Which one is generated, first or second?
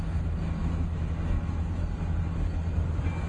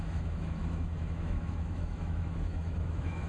second